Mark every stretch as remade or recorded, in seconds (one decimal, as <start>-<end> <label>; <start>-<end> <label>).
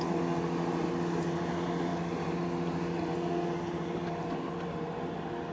0.0-5.5 recorded